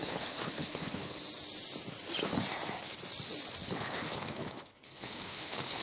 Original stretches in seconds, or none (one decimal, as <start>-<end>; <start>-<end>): 1.2-3.6

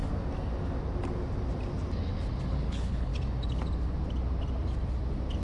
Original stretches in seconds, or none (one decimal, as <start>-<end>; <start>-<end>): 0.0-2.5; 3.1-5.4